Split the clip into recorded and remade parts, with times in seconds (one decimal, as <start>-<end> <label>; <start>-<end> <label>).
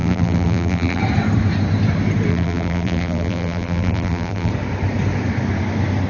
0.0-1.0 remade; 1.0-2.3 recorded; 2.3-4.5 remade; 4.5-6.1 recorded